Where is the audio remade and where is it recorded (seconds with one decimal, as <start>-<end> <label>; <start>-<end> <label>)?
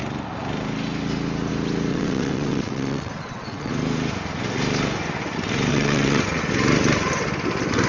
0.0-1.9 recorded; 1.9-3.7 remade; 3.7-5.7 recorded; 5.7-6.4 remade; 6.4-7.9 recorded